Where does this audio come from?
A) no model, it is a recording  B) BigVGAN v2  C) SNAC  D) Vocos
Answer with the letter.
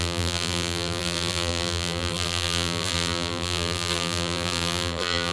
B